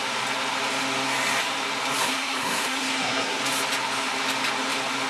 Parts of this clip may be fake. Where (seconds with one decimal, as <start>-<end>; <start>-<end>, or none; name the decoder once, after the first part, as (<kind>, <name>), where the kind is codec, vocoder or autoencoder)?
2.0-3.4 (codec, SNAC)